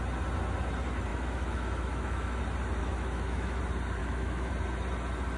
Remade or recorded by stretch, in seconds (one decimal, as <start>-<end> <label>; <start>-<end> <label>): 0.0-1.1 recorded; 1.1-2.4 remade; 2.4-2.8 recorded; 2.8-3.6 remade; 3.6-4.0 recorded; 4.0-4.5 remade; 4.5-5.4 recorded